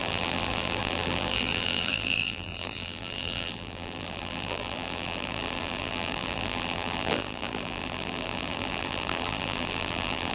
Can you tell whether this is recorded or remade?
remade